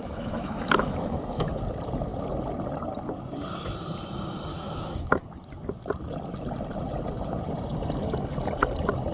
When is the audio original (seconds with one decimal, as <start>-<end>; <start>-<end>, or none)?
1.5-4.5; 5.2-9.1